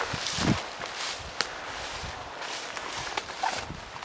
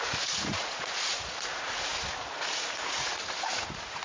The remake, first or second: second